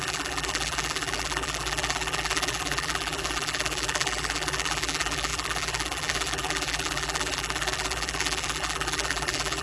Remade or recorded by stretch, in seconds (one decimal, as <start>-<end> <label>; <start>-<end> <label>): 0.0-9.6 remade